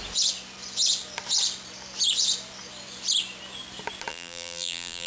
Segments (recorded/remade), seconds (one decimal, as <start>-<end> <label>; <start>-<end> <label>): 0.0-4.1 recorded; 4.1-5.1 remade